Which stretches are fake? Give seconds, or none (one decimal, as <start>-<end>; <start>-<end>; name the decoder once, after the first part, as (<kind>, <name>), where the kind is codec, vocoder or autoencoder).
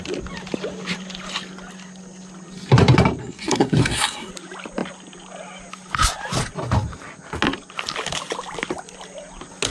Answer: 3.2-4.3 (codec, SNAC)